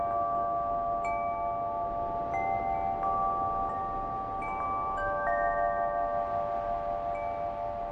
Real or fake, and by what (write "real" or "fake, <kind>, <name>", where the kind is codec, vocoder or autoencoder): real